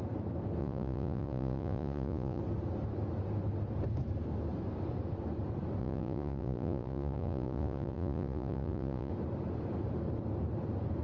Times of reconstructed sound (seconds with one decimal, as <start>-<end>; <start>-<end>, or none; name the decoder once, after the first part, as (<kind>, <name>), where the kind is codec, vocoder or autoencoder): 0.6-2.4 (vocoder, Vocos); 5.8-9.1